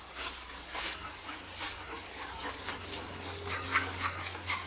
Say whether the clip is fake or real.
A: fake